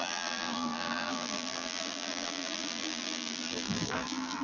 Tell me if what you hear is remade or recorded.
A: remade